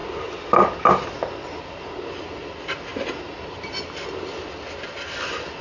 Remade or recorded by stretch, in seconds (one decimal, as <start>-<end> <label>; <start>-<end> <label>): 0.0-5.6 recorded